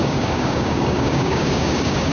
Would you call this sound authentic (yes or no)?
no